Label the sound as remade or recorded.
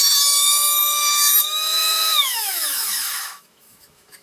remade